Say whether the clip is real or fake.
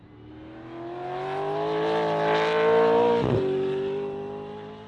real